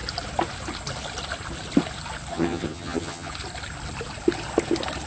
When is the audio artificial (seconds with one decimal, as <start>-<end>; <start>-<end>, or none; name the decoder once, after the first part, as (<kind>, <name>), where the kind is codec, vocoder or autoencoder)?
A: 2.3-3.3 (vocoder, HiFi-GAN)